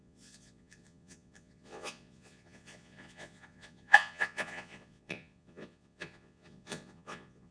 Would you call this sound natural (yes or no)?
no